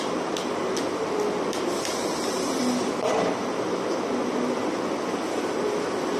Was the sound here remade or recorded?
recorded